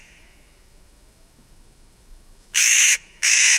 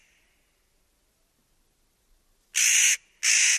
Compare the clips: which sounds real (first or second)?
second